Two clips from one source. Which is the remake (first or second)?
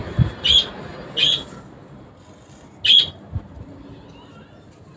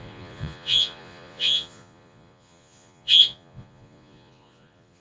second